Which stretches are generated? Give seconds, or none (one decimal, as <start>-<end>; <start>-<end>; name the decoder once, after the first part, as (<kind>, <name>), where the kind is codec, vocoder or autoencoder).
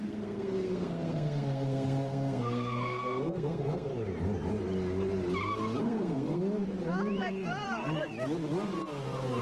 0.0-3.9 (codec, SNAC); 5.8-6.4; 7.2-8.1